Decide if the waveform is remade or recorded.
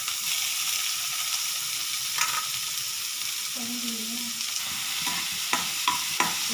recorded